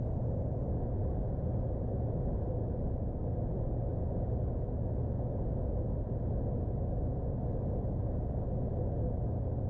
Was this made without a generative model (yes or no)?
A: yes